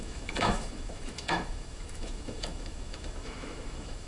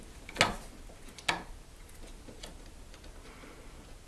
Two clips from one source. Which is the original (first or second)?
second